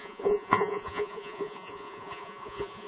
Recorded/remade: remade